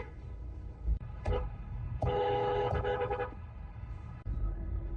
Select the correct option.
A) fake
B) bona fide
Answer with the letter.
A